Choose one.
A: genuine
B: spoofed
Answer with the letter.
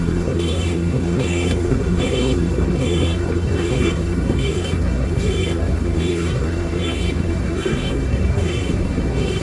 B